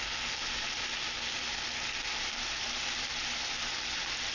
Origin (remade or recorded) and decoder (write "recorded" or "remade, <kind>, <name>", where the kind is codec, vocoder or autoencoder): remade, vocoder, BigVGAN v2